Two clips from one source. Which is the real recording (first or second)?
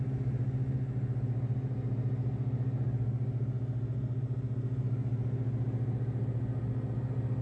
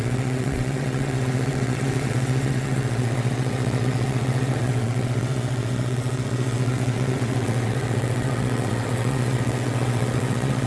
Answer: first